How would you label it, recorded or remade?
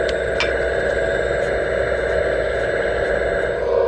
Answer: recorded